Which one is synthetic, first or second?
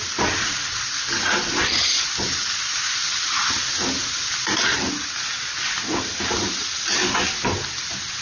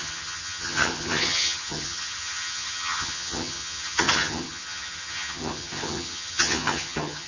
second